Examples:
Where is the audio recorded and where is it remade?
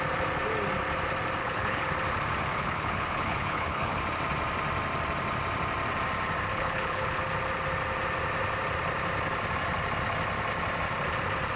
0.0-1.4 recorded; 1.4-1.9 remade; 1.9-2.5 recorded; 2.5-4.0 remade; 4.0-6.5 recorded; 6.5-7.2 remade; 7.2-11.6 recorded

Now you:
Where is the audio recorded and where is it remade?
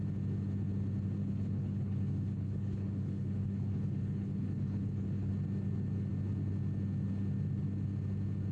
0.0-1.2 recorded; 1.2-5.3 remade; 5.3-8.5 recorded